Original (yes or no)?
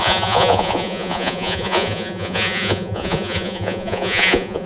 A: no